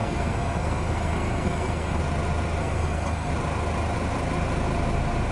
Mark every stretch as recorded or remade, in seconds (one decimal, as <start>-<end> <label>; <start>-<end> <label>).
0.0-2.0 remade; 2.0-2.6 recorded; 2.6-3.3 remade; 3.3-5.3 recorded